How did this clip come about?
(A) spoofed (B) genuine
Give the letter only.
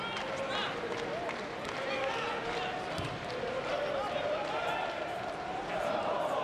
B